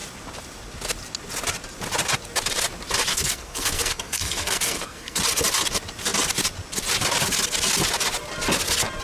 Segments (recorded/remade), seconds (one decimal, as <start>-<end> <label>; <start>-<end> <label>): 0.0-3.1 recorded; 3.1-5.2 remade; 5.2-9.0 recorded